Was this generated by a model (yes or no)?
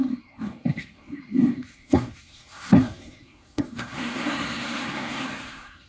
yes